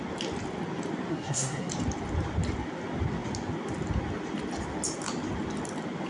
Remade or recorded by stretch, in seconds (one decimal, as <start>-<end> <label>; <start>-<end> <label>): 0.0-1.1 recorded; 1.1-1.7 remade; 1.7-6.1 recorded